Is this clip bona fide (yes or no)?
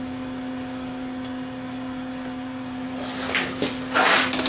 yes